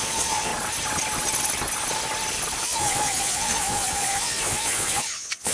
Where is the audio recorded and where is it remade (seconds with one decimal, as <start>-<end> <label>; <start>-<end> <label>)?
0.0-0.5 remade; 0.5-2.6 recorded; 2.6-5.5 remade